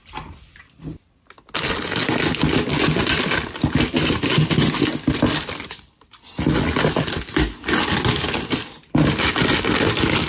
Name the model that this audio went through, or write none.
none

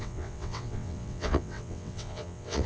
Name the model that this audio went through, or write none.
vocoder, WaveNeXt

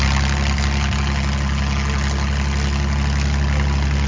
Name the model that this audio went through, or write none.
none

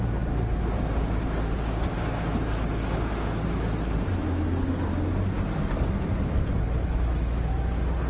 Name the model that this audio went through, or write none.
none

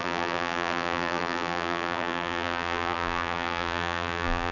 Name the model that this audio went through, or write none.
vocoder, BigVGAN v2